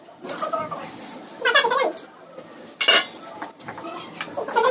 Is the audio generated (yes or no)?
no